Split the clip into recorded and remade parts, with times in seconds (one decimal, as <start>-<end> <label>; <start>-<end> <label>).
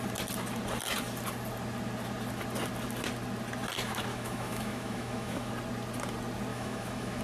0.0-4.1 recorded; 4.1-5.5 remade; 5.5-6.5 recorded; 6.5-7.2 remade